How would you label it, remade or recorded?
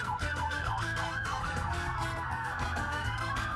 remade